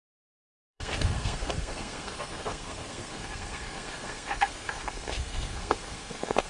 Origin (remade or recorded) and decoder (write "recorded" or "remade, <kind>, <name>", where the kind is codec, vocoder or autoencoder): remade, codec, SNAC